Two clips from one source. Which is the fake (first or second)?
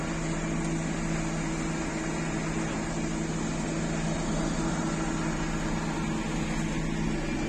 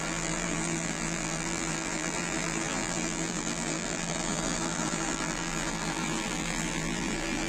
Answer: second